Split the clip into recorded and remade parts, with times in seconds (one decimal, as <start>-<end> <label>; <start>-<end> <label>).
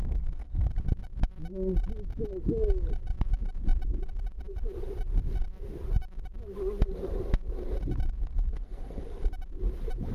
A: 0.0-0.7 remade; 0.7-8.2 recorded; 8.2-9.0 remade; 9.0-10.1 recorded